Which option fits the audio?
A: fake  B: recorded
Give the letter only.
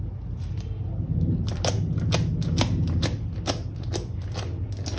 B